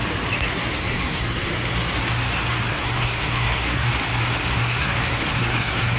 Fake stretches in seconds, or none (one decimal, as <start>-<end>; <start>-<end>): 0.7-1.5; 2.7-3.9; 4.5-6.0